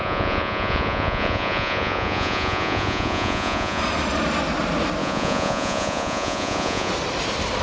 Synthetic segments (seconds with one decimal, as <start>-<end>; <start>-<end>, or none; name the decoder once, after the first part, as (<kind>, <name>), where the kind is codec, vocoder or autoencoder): 0.0-3.8 (vocoder, Vocos); 5.0-6.9